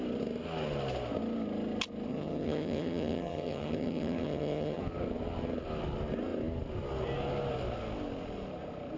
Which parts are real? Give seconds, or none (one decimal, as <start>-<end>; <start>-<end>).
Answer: 0.0-2.1; 4.8-9.0